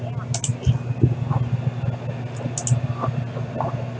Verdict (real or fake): real